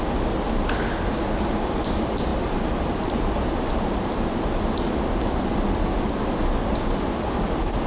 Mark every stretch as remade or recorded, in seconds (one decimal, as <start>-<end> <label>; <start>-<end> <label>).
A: 0.0-2.3 recorded; 2.3-4.6 remade; 4.6-7.9 recorded